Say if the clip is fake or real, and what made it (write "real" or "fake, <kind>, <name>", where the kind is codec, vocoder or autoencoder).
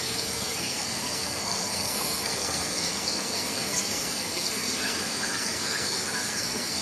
fake, codec, SNAC